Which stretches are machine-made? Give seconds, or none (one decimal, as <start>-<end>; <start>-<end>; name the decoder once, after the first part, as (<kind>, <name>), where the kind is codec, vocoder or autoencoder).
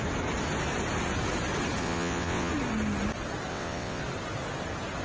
1.8-2.5 (vocoder, WaveNeXt); 3.5-4.0